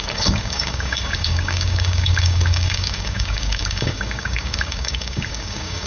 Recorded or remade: remade